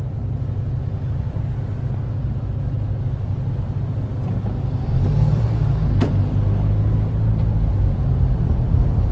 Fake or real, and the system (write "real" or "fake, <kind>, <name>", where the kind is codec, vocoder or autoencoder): real